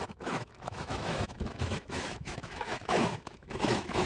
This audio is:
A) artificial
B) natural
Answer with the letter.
A